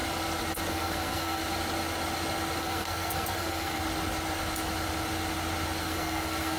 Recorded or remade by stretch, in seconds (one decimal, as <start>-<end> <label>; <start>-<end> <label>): 0.0-0.7 recorded; 0.7-1.4 remade; 1.4-2.6 recorded; 2.6-3.8 remade; 3.8-5.8 recorded; 5.8-6.6 remade